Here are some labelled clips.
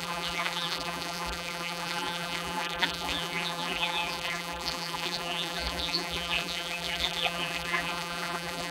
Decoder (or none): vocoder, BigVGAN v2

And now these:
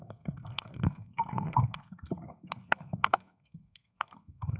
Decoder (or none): codec, SNAC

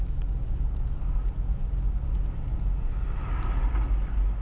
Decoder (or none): none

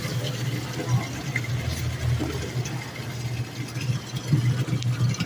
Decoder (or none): none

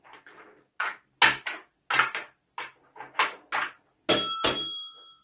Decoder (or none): none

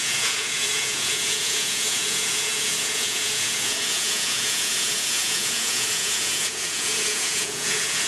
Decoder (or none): vocoder, Vocos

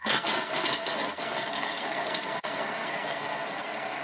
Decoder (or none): codec, SNAC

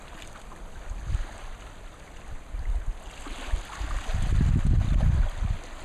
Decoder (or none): none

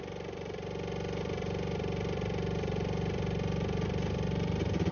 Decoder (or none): none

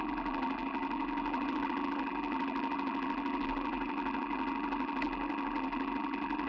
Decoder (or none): vocoder, BigVGAN v2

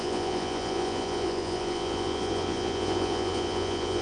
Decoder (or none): vocoder, Vocos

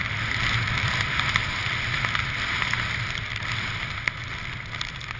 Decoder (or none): none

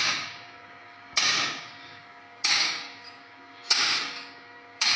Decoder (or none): codec, DAC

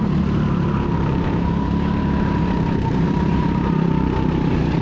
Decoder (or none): vocoder, BigVGAN v2